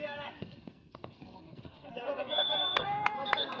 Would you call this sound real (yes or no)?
no